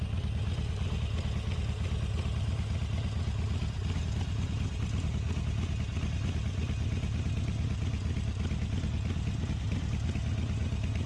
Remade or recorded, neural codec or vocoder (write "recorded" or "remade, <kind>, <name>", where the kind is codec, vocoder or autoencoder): recorded